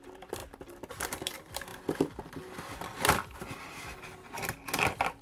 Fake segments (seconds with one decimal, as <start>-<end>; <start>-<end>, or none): 0.0-1.7; 4.8-5.2